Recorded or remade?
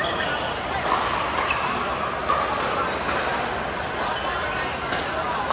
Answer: recorded